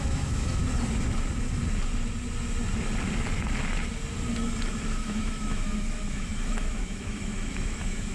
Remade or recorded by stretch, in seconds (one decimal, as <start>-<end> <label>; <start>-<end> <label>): 0.0-0.6 remade; 0.6-4.9 recorded; 4.9-8.1 remade